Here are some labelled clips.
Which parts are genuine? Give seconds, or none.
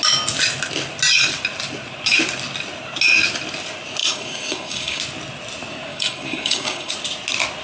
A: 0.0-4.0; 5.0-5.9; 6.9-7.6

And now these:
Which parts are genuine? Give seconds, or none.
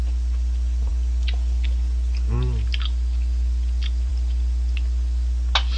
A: 0.0-5.8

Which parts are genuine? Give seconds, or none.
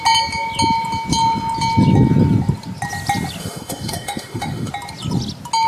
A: 0.0-3.4; 4.7-5.7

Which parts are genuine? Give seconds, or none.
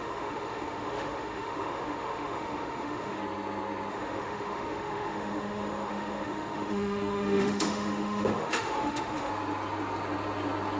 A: 3.2-3.9; 9.3-10.8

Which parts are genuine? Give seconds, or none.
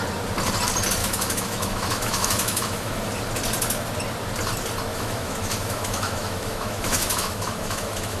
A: 0.0-1.0; 2.9-4.9